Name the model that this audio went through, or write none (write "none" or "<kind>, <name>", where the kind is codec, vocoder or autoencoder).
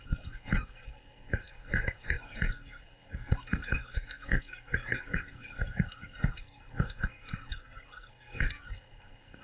codec, SNAC